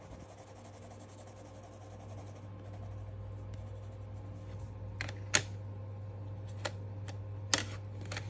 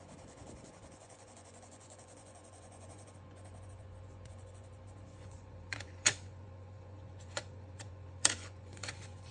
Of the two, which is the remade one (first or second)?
second